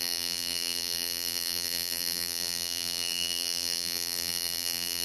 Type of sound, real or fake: fake